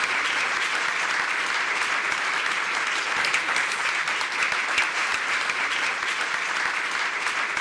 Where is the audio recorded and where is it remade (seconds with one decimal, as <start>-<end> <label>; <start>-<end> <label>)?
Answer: 0.0-7.6 recorded